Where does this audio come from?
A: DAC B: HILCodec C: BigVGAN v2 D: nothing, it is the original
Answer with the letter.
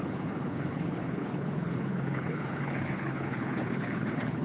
B